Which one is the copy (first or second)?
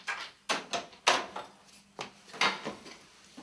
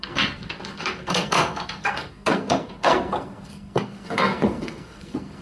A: second